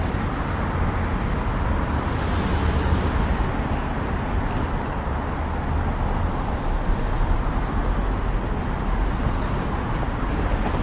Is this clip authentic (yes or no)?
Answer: yes